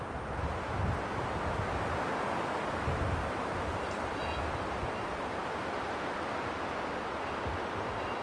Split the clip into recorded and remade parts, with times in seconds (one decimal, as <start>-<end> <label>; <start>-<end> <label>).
0.0-8.2 recorded